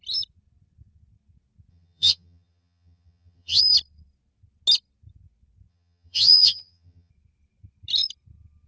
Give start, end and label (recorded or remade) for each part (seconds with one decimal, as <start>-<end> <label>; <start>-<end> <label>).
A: 0.0-1.7 recorded; 1.7-3.6 remade; 3.6-5.7 recorded; 5.7-7.1 remade; 7.1-8.7 recorded